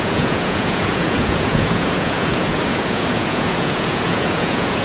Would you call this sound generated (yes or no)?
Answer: yes